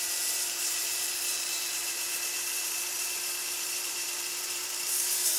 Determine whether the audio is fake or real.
fake